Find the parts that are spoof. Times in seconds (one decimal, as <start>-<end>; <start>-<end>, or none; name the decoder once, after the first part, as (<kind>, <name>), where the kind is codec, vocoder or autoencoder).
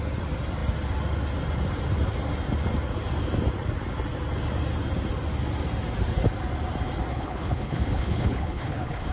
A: 7.1-9.1 (codec, HILCodec)